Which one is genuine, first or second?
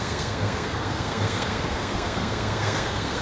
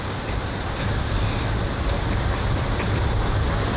second